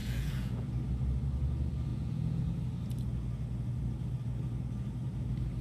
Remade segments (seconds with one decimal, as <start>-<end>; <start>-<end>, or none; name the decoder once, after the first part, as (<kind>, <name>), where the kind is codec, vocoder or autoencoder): 0.0-0.7 (vocoder, Vocos); 1.9-2.4